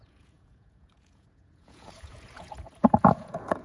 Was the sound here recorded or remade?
remade